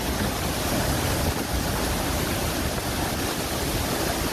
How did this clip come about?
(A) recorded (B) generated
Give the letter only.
A